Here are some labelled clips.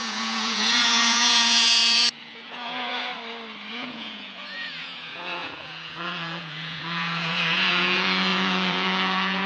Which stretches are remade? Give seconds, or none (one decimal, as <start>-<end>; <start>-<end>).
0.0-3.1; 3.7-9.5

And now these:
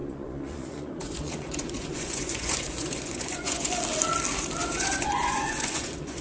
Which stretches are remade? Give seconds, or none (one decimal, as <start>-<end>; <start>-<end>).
0.0-3.7; 4.6-6.2

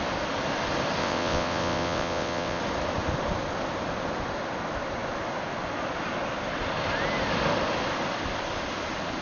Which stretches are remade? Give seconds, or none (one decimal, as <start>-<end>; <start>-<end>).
1.0-2.6